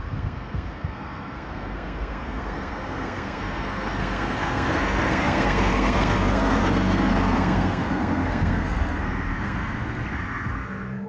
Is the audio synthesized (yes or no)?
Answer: yes